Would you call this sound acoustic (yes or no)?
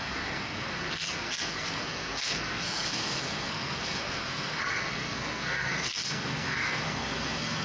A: no